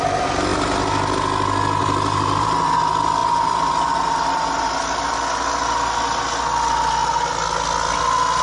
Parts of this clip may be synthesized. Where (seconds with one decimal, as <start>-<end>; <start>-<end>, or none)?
1.8-2.8; 3.2-4.7